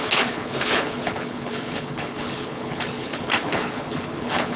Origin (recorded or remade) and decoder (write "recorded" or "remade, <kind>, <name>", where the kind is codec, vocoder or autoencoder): remade, codec, HILCodec